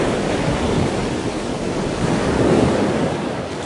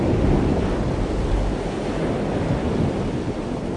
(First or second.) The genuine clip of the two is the second